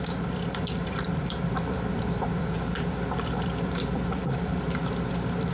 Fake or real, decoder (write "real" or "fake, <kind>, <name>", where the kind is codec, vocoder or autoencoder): fake, vocoder, BigVGAN v2